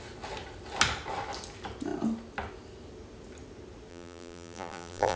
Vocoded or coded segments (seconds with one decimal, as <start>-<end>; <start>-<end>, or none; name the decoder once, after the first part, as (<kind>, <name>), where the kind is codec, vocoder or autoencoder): 3.9-5.2 (vocoder, BigVGAN v2)